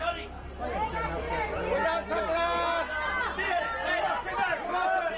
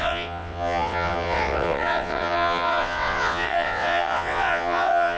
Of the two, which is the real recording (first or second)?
first